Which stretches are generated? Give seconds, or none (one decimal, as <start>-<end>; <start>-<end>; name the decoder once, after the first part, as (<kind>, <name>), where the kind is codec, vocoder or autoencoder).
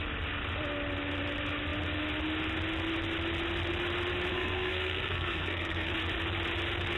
4.3-5.9 (codec, SNAC)